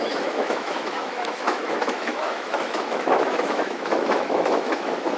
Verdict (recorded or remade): remade